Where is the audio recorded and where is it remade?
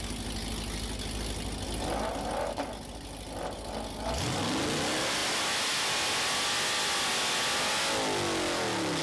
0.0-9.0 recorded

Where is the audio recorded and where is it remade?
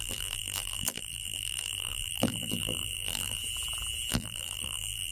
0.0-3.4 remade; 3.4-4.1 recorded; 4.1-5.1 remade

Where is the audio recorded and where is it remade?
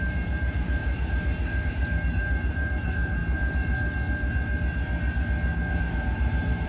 0.0-3.2 remade; 3.2-5.8 recorded; 5.8-6.7 remade